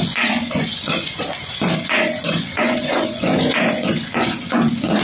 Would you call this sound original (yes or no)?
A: no